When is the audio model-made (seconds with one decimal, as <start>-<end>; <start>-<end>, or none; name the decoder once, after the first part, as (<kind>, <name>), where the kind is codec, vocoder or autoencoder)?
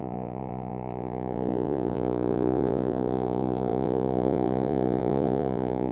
0.0-5.9 (vocoder, Vocos)